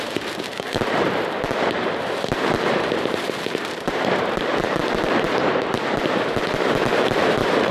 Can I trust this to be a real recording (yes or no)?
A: no